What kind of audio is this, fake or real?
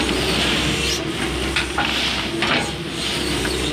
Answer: fake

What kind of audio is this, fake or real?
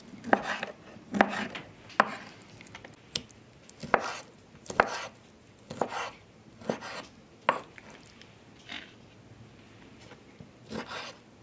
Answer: real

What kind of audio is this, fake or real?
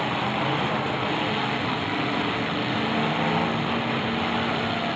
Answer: real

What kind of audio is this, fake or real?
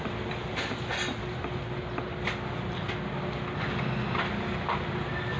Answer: real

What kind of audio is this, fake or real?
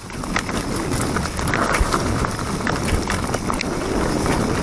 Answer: real